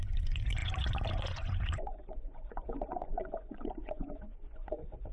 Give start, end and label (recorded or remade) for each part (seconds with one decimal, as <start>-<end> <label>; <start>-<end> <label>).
0.0-5.1 remade